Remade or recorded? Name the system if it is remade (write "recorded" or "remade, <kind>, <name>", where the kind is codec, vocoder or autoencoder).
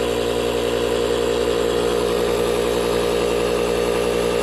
recorded